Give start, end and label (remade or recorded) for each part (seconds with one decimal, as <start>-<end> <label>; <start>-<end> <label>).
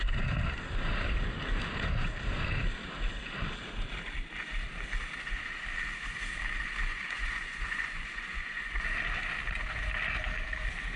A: 0.0-6.9 recorded; 6.9-8.8 remade; 8.8-11.0 recorded